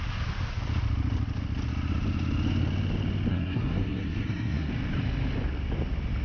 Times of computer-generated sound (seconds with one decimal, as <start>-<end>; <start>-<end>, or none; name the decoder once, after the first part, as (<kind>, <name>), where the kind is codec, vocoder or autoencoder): 3.3-4.7 (codec, SNAC)